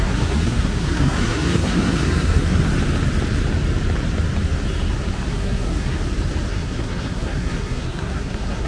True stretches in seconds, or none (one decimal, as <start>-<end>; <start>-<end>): 2.6-5.3; 6.0-6.5